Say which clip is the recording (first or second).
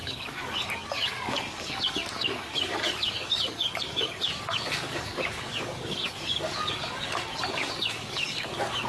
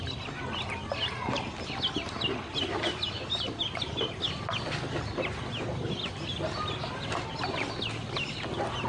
second